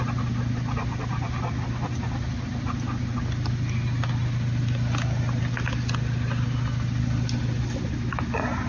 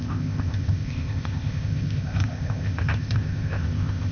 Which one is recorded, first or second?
first